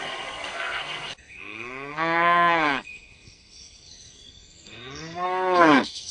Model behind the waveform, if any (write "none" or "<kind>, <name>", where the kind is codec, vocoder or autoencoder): codec, SNAC